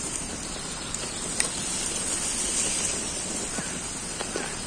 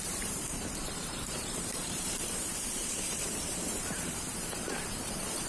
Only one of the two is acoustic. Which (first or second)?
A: first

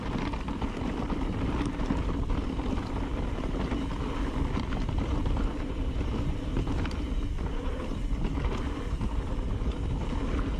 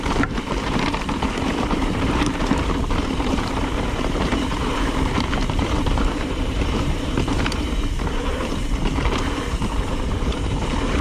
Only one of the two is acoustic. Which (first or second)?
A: first